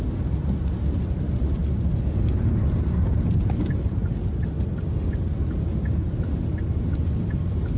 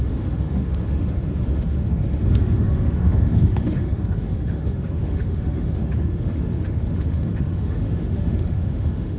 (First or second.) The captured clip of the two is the first